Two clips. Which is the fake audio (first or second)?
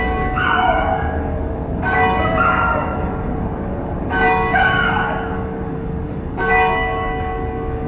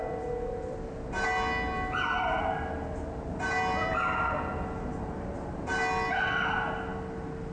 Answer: first